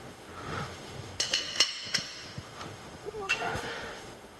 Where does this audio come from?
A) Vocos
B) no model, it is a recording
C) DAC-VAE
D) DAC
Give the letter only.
C